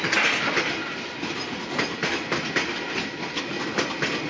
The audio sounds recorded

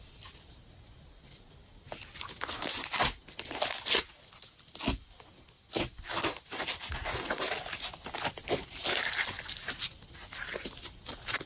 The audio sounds recorded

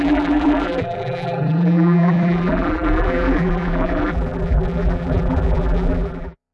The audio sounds remade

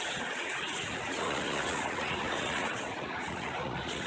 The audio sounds remade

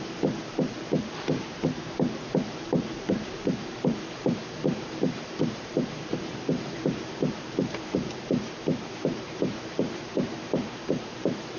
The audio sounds remade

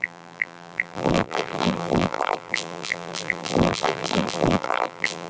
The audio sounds remade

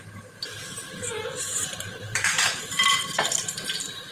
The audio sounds remade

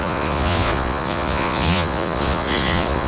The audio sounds remade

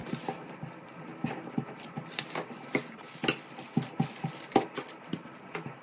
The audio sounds recorded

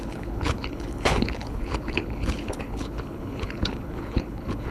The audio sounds remade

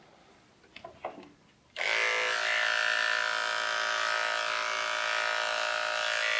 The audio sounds recorded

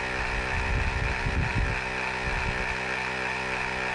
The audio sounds recorded